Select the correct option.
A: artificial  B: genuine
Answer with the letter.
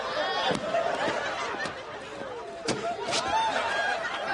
B